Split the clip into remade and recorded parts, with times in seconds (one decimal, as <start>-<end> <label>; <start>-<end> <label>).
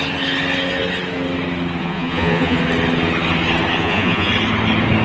0.0-1.8 recorded; 1.8-2.6 remade; 2.6-3.8 recorded; 3.8-4.3 remade; 4.3-5.0 recorded